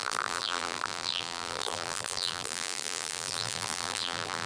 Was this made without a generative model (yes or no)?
no